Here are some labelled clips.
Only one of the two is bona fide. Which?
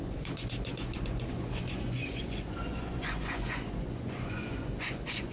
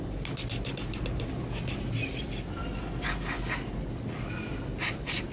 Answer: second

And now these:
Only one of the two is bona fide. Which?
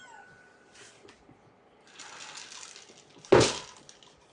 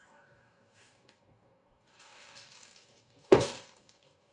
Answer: first